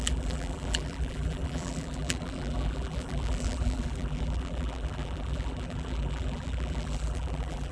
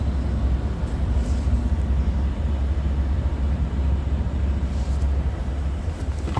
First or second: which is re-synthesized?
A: first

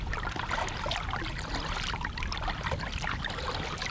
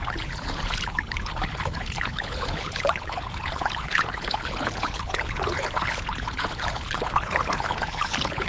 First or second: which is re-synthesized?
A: second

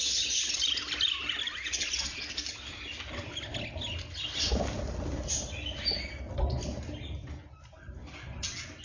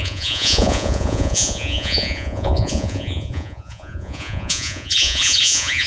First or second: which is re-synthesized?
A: second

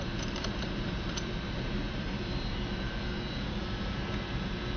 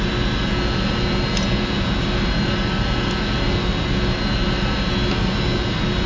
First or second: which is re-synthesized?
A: first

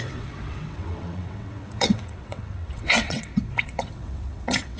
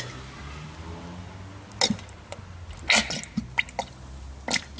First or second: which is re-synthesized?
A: first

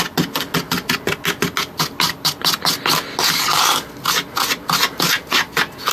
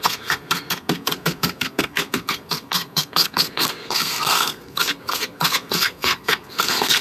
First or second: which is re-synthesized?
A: second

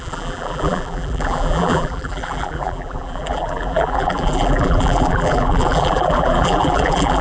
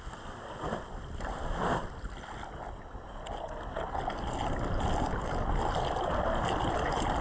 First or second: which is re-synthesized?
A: first